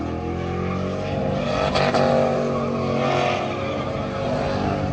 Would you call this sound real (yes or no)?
yes